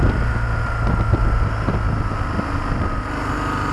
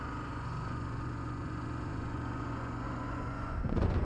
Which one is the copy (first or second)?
second